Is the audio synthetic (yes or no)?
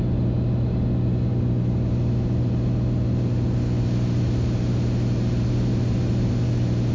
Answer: no